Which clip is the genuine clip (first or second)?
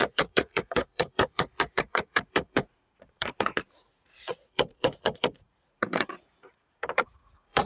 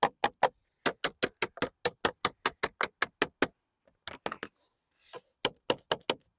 second